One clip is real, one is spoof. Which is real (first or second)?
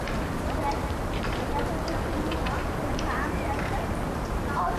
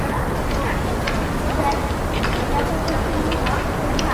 second